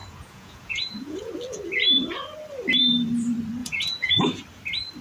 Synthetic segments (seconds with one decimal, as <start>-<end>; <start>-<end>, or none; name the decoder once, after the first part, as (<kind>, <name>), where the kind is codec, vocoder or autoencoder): 0.0-1.3 (vocoder, Vocos); 3.6-4.2